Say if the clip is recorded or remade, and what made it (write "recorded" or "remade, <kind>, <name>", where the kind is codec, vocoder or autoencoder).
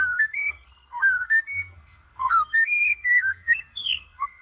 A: remade, codec, SNAC